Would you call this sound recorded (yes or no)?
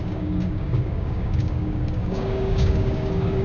no